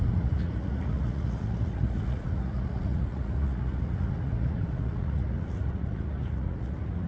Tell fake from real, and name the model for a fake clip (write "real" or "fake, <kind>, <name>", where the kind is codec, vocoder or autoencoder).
fake, vocoder, Vocos